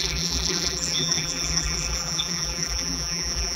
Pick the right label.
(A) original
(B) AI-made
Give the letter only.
B